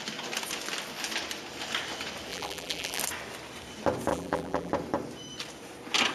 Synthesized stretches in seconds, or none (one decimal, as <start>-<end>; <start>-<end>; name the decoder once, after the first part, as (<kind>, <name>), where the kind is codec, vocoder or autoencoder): 2.3-3.0 (vocoder, BigVGAN v2); 4.1-4.7